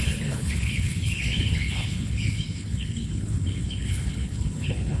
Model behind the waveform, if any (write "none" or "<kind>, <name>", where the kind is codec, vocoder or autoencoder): codec, HILCodec